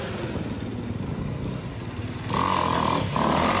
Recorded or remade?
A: recorded